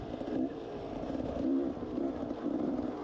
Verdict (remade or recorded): recorded